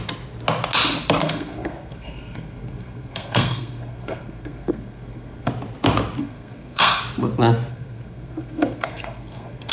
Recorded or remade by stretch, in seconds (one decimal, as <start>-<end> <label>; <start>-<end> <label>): 0.0-1.2 recorded; 1.2-5.5 remade; 5.5-6.2 recorded; 6.2-7.0 remade; 7.0-7.7 recorded; 7.7-9.7 remade